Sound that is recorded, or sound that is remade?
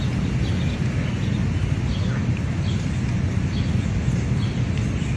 recorded